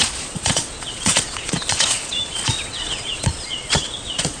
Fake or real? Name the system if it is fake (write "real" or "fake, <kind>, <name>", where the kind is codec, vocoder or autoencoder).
fake, vocoder, Vocos